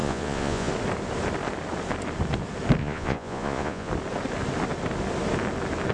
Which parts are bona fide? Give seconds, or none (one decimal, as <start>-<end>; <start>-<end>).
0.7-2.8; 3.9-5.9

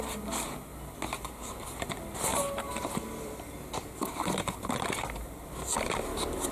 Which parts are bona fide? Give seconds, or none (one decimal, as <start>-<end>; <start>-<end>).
0.0-2.3; 3.5-6.5

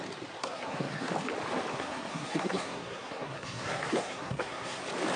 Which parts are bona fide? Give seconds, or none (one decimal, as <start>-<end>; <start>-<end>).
0.0-0.4; 1.1-1.7; 4.8-5.2